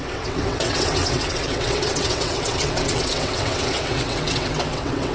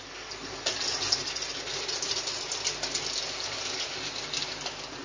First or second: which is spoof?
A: first